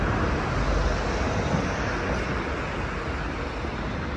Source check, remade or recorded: recorded